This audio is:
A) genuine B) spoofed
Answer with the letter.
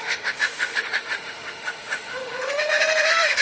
B